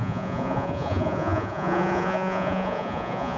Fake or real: fake